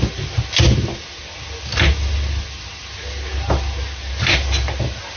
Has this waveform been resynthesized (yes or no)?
no